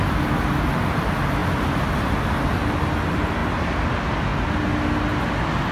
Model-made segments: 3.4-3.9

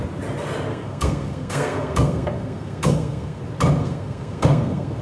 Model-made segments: 0.7-3.4; 3.8-5.0

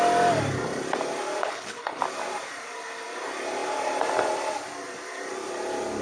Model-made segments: 1.4-2.0

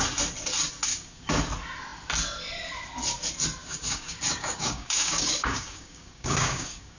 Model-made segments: 0.9-1.4; 3.6-7.0

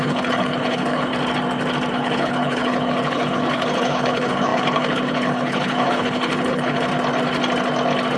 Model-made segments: 0.0-1.1; 1.9-6.9

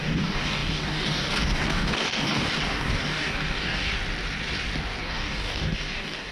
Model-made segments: 0.0-3.9; 5.0-6.3

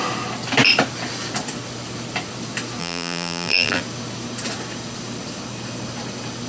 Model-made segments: 2.8-3.8